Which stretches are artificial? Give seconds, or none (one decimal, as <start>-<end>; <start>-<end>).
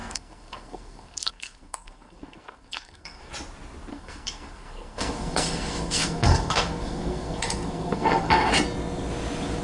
0.0-3.3; 3.9-8.5